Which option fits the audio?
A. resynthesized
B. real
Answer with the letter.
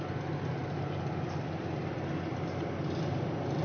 B